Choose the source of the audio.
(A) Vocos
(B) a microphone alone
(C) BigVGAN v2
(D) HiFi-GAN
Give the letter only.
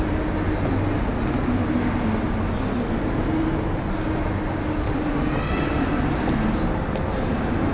B